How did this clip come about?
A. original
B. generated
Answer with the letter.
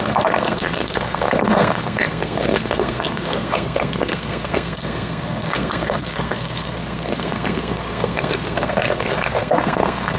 B